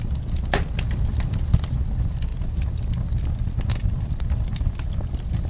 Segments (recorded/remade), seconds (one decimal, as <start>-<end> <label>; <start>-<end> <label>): 0.0-5.5 recorded